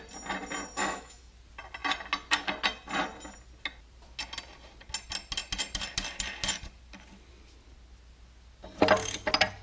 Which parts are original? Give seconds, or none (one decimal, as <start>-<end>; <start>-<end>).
0.0-0.8; 1.3-9.6